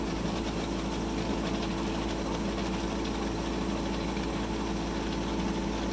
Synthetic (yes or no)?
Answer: no